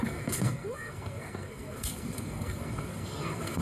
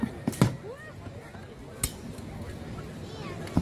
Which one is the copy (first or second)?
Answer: first